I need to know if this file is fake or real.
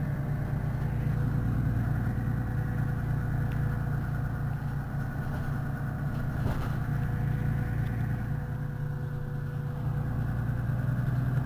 real